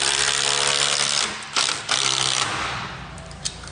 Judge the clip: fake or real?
fake